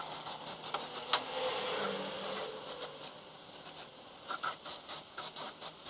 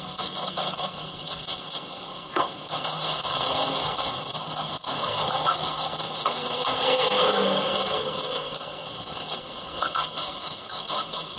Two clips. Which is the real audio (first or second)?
first